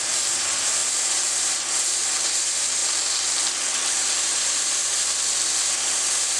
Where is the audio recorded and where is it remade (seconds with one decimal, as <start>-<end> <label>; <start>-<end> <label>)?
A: 0.0-2.8 remade; 2.8-3.9 recorded; 3.9-4.8 remade; 4.8-5.6 recorded; 5.6-6.4 remade